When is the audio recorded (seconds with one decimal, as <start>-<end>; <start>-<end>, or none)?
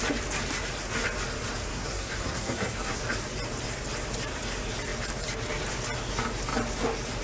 0.0-1.7; 3.0-7.2